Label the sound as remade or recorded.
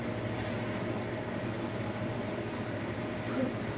recorded